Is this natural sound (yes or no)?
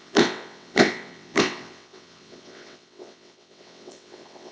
no